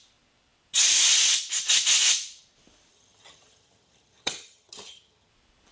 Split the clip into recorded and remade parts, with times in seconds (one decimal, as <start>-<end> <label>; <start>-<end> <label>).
0.0-2.9 recorded; 2.9-5.3 remade; 5.3-5.7 recorded